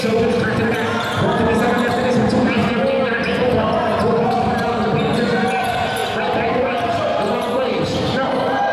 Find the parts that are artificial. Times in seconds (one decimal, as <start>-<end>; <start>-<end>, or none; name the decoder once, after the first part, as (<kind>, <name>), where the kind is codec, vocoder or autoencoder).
none